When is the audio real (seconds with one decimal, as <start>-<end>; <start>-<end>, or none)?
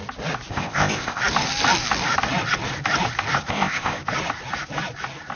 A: 0.0-0.5; 1.2-3.5; 4.0-5.4